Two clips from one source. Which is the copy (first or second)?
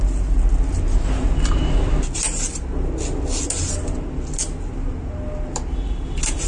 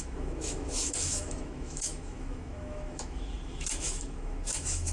second